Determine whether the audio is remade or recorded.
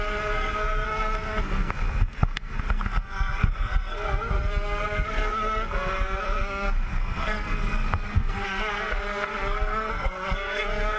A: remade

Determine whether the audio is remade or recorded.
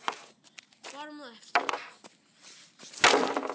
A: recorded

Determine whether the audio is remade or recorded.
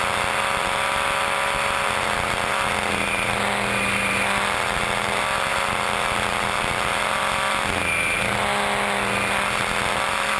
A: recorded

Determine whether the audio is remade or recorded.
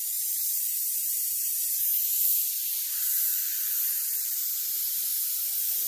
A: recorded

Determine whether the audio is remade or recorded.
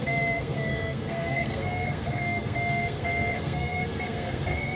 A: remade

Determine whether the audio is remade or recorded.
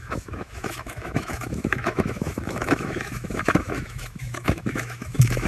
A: remade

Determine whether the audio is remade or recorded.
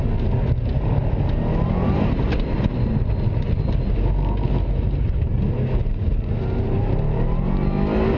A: recorded